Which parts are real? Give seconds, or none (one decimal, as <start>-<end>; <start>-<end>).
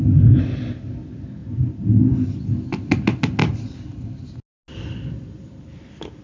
0.0-1.4; 2.5-6.2